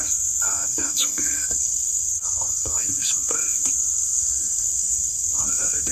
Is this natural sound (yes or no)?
no